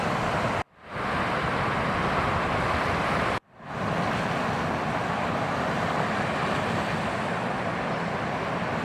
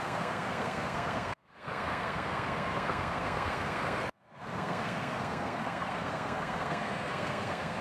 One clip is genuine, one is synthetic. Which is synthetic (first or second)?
second